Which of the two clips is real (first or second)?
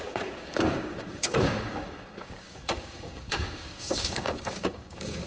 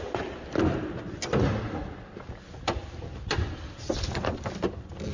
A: second